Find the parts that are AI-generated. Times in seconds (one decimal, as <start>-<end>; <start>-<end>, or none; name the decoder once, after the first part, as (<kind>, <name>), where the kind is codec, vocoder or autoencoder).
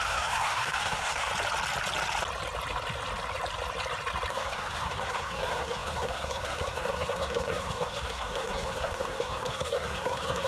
0.0-1.3 (codec, SNAC); 4.3-10.5